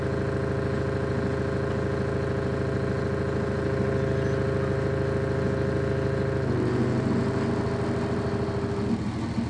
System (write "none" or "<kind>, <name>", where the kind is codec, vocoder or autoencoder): none